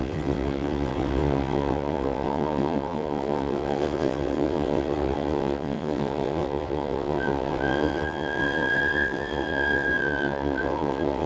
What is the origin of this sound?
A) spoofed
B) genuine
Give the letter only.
A